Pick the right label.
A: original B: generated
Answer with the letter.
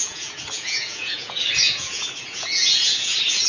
B